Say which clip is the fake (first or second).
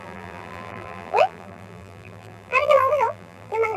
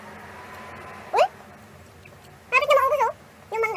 first